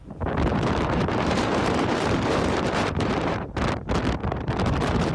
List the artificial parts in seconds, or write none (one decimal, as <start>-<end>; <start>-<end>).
0.5-3.6; 4.2-5.1